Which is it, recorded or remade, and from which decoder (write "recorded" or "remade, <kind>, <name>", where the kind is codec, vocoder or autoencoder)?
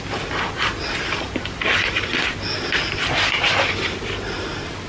recorded